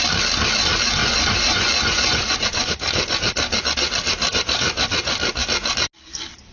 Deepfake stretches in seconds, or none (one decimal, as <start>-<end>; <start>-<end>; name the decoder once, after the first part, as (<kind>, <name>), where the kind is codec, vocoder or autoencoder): 1.0-2.7 (vocoder, Vocos)